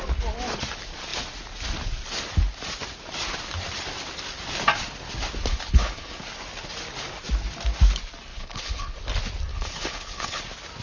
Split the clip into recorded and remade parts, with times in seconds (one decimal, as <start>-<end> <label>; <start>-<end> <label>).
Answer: 0.0-5.5 recorded; 5.5-6.2 remade; 6.2-8.3 recorded; 8.3-9.0 remade; 9.0-9.5 recorded; 9.5-10.4 remade; 10.4-10.8 recorded